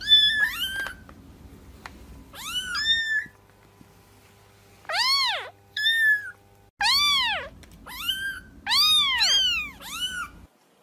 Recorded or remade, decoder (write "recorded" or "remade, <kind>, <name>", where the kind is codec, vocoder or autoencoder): recorded